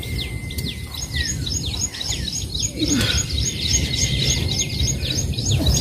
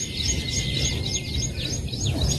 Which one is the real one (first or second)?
second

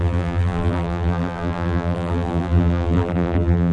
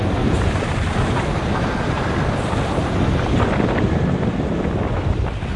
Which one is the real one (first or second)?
second